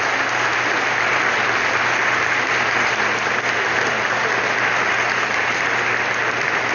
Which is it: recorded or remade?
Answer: recorded